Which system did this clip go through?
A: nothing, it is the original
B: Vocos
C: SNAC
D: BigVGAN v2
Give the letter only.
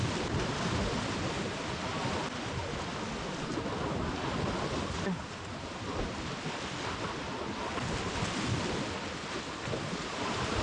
A